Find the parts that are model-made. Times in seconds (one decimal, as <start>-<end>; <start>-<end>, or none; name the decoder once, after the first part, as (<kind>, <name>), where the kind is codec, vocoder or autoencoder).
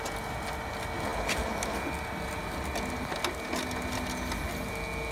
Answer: none